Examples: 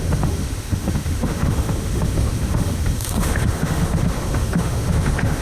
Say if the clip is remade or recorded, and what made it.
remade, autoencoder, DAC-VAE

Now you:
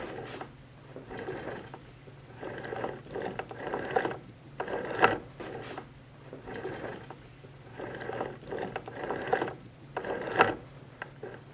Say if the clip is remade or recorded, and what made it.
recorded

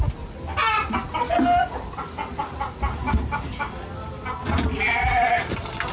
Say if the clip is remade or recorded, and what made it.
recorded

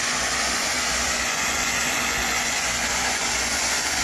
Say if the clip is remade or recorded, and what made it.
remade, vocoder, Vocos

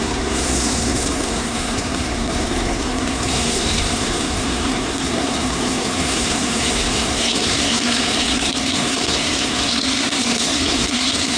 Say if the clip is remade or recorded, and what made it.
remade, codec, SNAC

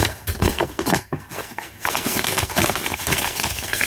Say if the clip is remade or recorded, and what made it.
remade, codec, SNAC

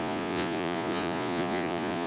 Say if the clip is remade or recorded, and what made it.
remade, vocoder, Vocos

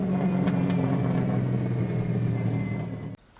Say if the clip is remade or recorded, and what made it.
recorded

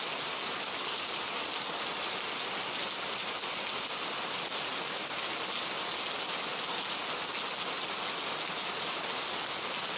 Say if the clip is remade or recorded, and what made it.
recorded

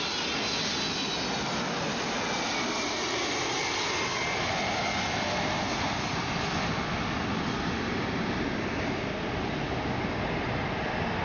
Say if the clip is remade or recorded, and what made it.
recorded